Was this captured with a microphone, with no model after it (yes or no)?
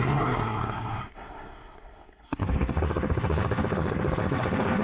no